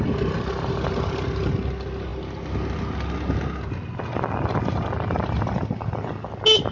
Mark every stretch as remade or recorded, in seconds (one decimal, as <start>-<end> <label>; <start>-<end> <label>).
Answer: 0.0-6.7 recorded